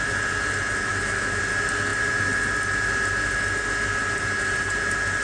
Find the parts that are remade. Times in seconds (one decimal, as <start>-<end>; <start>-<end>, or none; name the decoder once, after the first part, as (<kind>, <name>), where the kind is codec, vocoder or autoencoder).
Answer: 0.9-1.4 (autoencoder, DAC-VAE)